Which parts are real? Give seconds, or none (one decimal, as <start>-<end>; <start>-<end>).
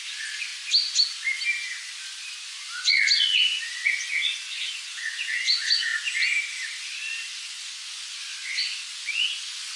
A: 0.5-2.3; 5.9-7.4; 8.3-9.0